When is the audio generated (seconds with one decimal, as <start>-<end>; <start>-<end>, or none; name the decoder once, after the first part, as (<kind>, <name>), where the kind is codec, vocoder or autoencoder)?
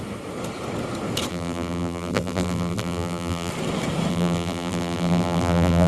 1.3-3.5 (vocoder, BigVGAN v2); 4.1-5.9